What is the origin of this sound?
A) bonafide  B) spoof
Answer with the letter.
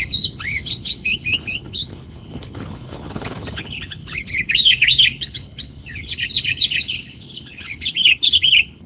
B